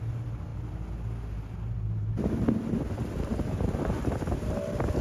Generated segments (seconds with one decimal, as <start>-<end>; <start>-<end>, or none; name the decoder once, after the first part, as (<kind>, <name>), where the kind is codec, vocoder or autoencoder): none